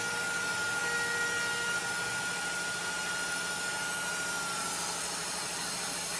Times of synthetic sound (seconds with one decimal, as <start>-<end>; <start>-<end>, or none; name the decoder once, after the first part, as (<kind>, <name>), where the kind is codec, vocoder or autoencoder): none